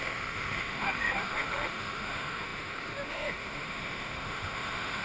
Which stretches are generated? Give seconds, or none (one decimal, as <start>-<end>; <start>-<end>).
0.0-5.0